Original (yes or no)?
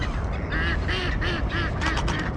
yes